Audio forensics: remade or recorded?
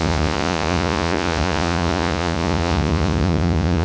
remade